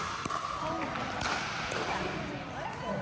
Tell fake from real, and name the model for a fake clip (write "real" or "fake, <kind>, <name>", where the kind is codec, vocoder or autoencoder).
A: real